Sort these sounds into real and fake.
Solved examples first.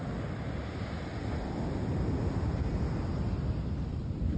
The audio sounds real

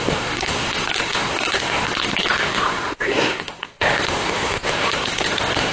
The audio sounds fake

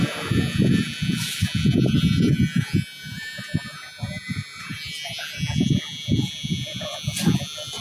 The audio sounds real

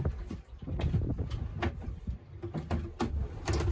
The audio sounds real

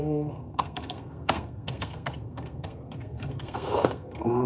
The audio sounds fake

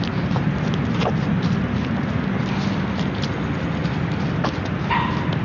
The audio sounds real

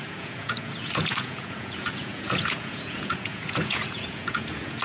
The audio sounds fake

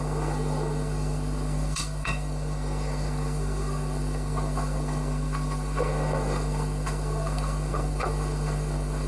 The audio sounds fake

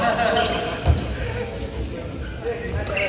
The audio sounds real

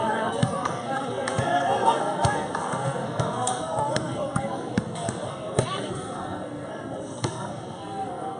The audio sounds fake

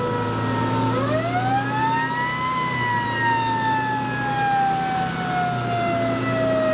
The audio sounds real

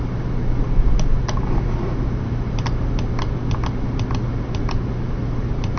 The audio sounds real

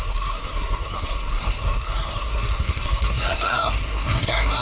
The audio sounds fake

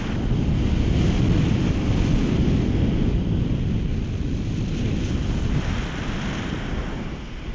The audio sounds real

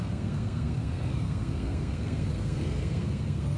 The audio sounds fake